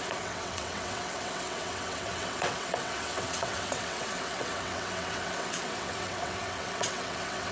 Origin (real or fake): fake